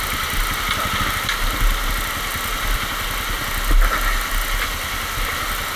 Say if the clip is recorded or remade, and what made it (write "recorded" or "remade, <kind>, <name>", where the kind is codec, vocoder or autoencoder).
recorded